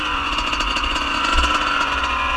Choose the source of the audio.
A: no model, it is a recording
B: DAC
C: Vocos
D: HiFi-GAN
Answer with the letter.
C